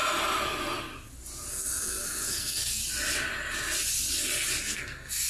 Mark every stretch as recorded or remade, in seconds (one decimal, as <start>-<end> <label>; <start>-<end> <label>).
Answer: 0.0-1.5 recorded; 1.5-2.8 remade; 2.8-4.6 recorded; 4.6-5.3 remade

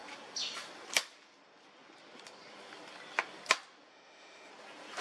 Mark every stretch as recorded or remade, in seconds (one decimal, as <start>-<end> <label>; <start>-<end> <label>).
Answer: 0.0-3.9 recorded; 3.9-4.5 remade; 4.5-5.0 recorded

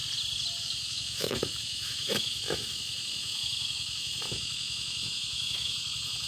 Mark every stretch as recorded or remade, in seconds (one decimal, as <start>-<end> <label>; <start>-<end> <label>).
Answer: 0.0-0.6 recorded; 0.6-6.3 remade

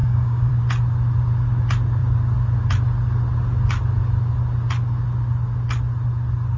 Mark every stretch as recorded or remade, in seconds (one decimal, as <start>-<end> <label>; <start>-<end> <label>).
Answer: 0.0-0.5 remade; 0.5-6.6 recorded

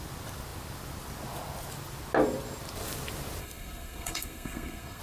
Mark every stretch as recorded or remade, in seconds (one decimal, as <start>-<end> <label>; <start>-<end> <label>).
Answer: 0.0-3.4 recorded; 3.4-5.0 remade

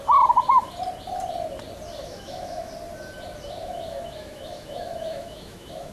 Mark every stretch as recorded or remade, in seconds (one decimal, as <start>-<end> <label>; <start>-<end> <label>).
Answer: 0.0-2.0 recorded; 2.0-2.7 remade; 2.7-3.6 recorded; 3.6-5.9 remade

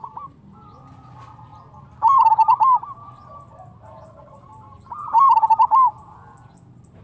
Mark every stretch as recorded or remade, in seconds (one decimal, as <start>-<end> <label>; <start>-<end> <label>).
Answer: 0.0-7.0 recorded

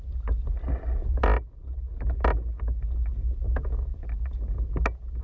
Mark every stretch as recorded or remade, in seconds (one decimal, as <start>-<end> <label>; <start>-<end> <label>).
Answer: 0.0-5.2 recorded